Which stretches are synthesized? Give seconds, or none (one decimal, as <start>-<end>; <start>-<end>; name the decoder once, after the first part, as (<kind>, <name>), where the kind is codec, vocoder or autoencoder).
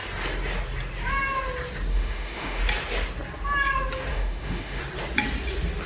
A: 1.9-2.6 (autoencoder, DAC-VAE); 4.1-4.8